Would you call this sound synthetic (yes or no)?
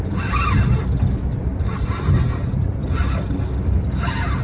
no